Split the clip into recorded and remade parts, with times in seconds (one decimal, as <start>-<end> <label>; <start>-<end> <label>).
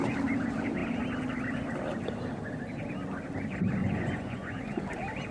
0.0-3.8 recorded; 3.8-4.8 remade; 4.8-5.3 recorded